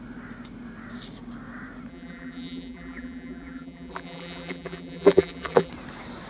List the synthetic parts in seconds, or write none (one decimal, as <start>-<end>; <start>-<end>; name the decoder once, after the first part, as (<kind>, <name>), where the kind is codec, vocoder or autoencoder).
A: 1.9-5.7 (vocoder, BigVGAN v2)